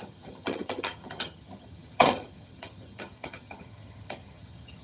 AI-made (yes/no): yes